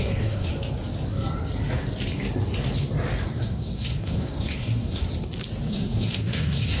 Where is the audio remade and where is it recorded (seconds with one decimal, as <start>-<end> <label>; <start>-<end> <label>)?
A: 0.0-0.5 remade; 0.5-3.4 recorded; 3.4-5.0 remade; 5.0-5.7 recorded; 5.7-6.8 remade